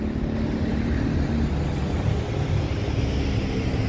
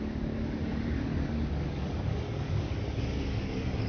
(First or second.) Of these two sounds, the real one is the first